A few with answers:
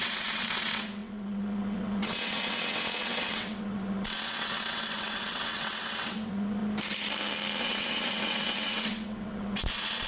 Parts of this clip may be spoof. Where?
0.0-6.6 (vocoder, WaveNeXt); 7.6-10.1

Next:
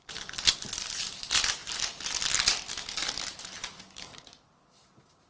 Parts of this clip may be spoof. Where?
none

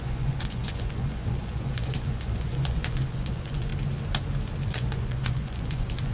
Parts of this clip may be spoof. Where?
0.0-3.7 (vocoder, Vocos); 4.7-6.1

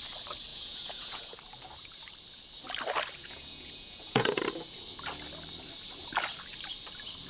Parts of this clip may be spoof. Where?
0.5-1.4 (vocoder, Vocos); 3.2-4.4